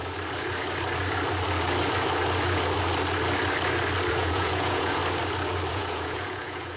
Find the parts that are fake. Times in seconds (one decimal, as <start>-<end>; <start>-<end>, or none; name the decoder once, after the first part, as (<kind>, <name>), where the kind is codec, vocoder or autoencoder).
4.1-5.0 (vocoder, Vocos); 5.7-6.8